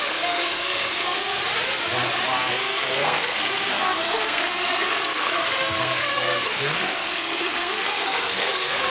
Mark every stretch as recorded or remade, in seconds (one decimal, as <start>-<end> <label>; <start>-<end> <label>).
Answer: 0.0-1.4 remade; 1.4-2.5 recorded; 2.5-8.9 remade